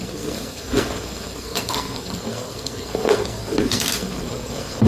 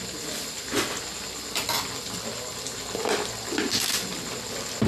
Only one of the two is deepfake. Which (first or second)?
first